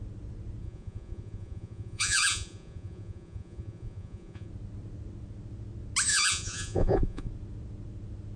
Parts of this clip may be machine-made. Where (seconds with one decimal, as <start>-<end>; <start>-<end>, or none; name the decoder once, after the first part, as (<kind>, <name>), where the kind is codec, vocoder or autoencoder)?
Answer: 0.6-4.5 (vocoder, Vocos); 6.1-7.3